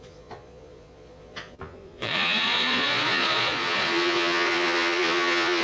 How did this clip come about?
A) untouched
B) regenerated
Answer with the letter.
B